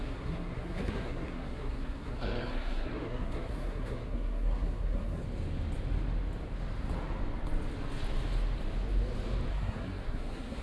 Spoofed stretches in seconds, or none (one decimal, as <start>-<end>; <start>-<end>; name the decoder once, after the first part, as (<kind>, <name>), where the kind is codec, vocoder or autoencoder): 0.0-5.2 (codec, SNAC); 9.5-10.6